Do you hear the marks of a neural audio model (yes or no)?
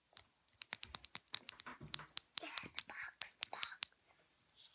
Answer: no